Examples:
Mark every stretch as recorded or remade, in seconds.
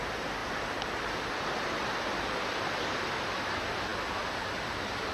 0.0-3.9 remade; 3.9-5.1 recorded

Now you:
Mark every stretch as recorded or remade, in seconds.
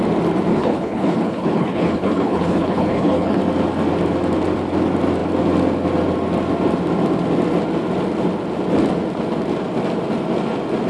0.0-0.5 recorded; 0.5-3.4 remade; 3.4-10.9 recorded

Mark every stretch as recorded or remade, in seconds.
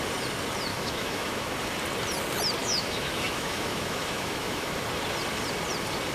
0.0-0.7 recorded; 0.7-1.5 remade; 1.5-2.6 recorded; 2.6-4.8 remade; 4.8-6.1 recorded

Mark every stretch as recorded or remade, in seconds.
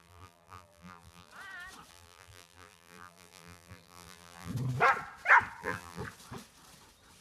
0.0-1.3 remade; 1.3-1.9 recorded; 1.9-4.5 remade; 4.5-5.6 recorded; 5.6-6.0 remade; 6.0-7.2 recorded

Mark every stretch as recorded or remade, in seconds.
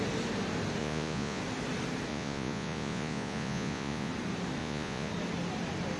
0.0-0.8 recorded; 0.8-1.4 remade; 1.4-2.1 recorded; 2.1-4.1 remade; 4.1-4.6 recorded; 4.6-5.1 remade; 5.1-6.0 recorded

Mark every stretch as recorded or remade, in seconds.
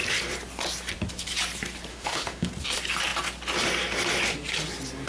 0.0-1.9 recorded; 1.9-2.5 remade; 2.5-5.1 recorded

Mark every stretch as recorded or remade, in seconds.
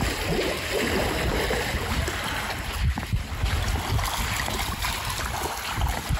0.0-6.2 recorded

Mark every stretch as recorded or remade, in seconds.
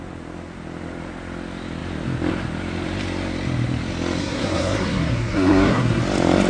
0.0-4.2 recorded; 4.2-6.0 remade; 6.0-6.5 recorded